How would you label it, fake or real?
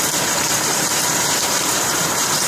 fake